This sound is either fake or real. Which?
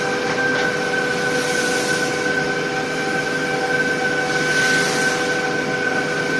real